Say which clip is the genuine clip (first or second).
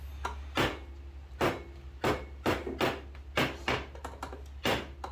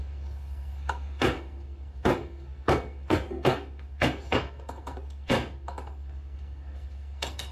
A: first